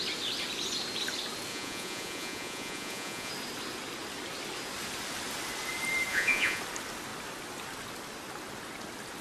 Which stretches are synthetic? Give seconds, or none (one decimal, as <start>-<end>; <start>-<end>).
1.5-3.3; 6.1-6.6